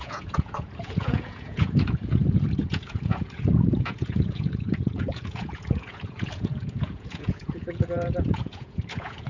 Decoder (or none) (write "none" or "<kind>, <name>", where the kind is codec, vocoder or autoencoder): vocoder, Vocos